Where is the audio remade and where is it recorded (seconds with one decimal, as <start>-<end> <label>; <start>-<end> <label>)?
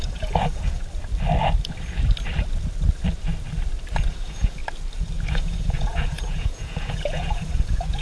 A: 0.0-0.8 remade; 0.8-4.1 recorded; 4.1-4.6 remade; 4.6-5.3 recorded; 5.3-8.0 remade